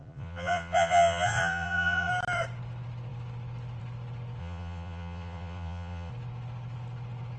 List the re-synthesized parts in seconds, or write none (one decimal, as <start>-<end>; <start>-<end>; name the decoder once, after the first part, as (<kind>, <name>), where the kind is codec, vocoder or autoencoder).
0.0-2.1 (vocoder, Vocos); 4.4-6.1